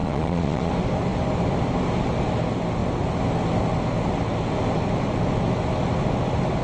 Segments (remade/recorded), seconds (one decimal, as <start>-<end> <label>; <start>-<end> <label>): 0.0-0.7 remade; 0.7-6.6 recorded